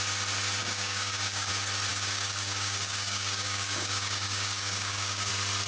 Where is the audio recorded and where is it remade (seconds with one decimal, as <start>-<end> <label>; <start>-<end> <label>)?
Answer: 0.0-0.6 recorded; 0.6-1.5 remade; 1.5-1.9 recorded; 1.9-5.3 remade; 5.3-5.7 recorded